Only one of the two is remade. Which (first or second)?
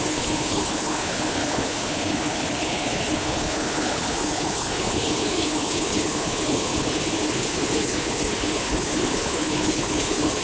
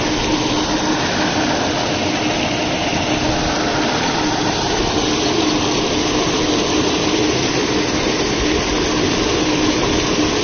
first